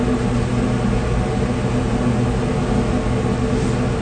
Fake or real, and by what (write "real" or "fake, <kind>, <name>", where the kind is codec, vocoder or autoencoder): real